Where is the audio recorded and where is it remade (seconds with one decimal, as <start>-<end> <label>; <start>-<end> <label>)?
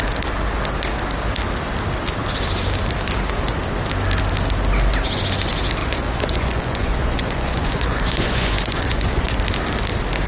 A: 0.0-5.8 recorded; 5.8-9.4 remade; 9.4-10.3 recorded